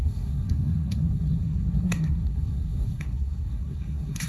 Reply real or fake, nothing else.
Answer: fake